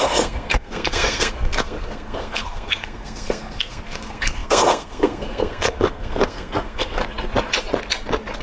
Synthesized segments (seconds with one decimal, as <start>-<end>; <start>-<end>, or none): 0.0-7.0

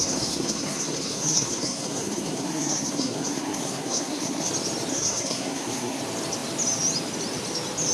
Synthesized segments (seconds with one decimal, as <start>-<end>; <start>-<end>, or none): 0.0-4.5; 4.9-6.0

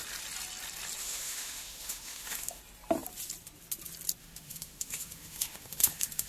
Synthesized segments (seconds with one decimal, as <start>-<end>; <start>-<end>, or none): 1.0-2.6; 4.2-6.3

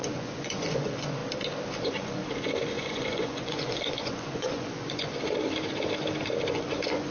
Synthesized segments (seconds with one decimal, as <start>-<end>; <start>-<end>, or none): 0.0-1.2; 1.8-2.2; 2.7-5.1; 6.5-7.1

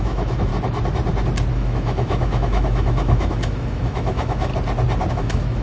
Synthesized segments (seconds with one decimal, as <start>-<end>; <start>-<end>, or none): 0.0-0.5; 1.5-4.5; 5.1-5.6